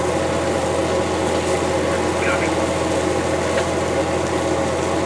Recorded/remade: recorded